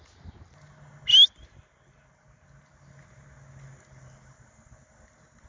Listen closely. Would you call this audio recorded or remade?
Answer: recorded